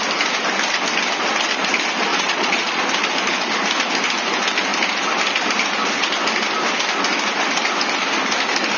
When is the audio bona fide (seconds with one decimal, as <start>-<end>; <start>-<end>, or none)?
0.0-2.1; 2.8-8.8